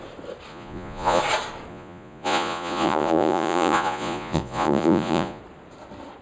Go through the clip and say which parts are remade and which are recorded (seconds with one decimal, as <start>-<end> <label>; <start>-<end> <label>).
0.0-0.5 recorded; 0.5-1.2 remade; 1.2-1.7 recorded; 1.7-5.4 remade; 5.4-6.2 recorded